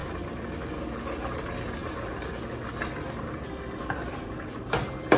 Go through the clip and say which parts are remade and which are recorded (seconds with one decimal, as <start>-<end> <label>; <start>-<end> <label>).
0.0-5.2 recorded